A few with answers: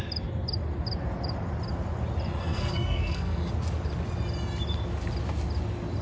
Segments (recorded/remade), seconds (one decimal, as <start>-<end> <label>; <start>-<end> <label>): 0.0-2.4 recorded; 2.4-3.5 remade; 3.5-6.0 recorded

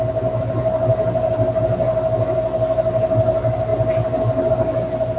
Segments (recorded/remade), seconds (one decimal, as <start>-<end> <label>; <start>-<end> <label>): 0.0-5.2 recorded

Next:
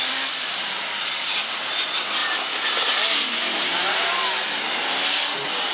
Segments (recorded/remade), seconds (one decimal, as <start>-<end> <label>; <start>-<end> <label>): 0.0-5.7 recorded